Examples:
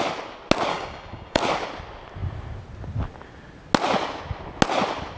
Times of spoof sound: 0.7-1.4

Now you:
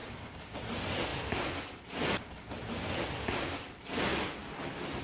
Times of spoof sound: 0.0-0.6